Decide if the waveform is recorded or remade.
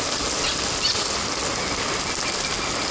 recorded